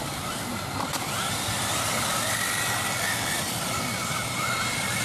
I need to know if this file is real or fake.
real